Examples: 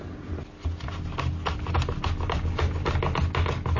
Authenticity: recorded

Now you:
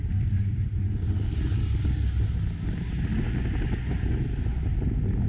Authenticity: recorded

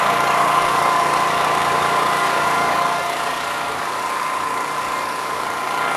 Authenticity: remade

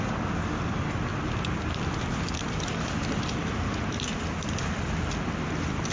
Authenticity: recorded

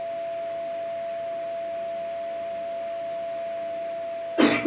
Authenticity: recorded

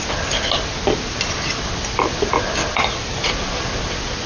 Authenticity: recorded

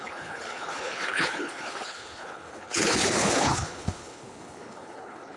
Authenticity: remade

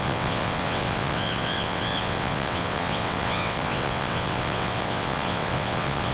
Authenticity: remade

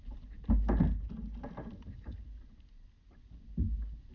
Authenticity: recorded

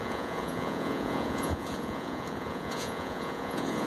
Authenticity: remade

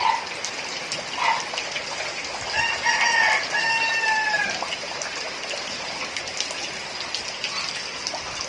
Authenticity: recorded